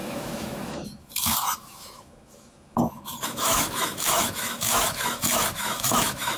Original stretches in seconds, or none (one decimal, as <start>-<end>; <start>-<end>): none